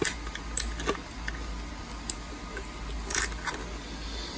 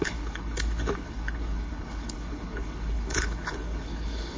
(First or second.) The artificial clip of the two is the second